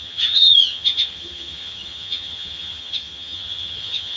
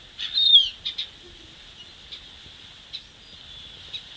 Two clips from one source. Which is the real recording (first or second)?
second